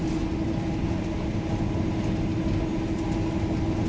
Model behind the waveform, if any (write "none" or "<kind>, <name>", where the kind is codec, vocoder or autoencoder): none